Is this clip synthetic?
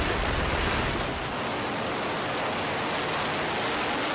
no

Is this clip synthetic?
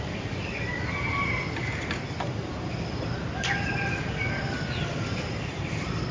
yes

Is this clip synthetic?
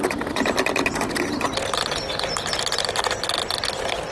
no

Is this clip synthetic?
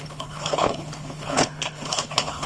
yes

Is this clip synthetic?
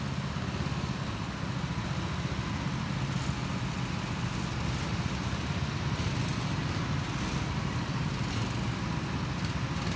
no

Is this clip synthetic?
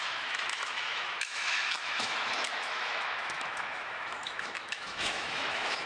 yes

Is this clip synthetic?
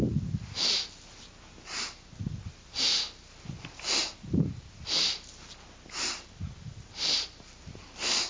no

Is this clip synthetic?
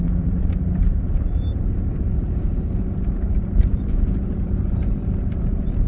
yes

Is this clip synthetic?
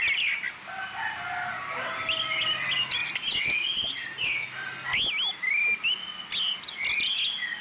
no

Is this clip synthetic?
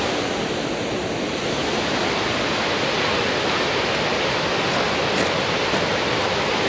no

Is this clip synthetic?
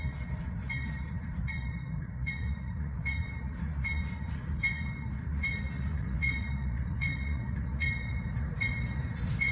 yes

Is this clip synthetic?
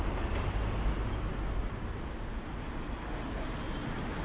no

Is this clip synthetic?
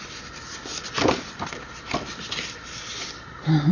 no